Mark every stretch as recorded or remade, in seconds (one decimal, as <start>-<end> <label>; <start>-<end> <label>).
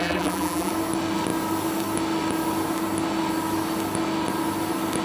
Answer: 0.0-0.7 remade; 0.7-5.0 recorded